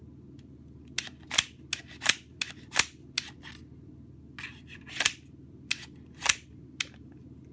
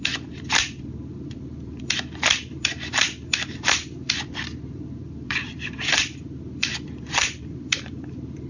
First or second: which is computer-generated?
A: second